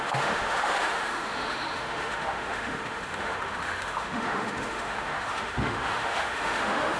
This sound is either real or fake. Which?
fake